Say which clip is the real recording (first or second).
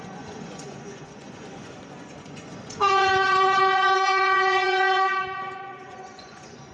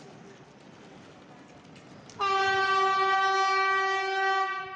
second